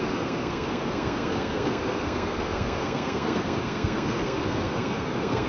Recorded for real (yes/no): no